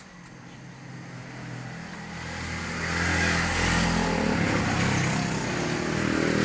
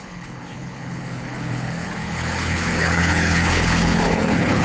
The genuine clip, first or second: first